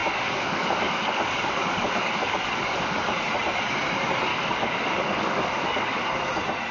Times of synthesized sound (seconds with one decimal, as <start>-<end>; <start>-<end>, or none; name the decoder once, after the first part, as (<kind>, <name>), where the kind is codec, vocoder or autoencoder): 0.0-3.0 (codec, DAC); 4.3-6.1